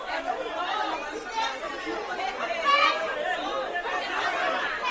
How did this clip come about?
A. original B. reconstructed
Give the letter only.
A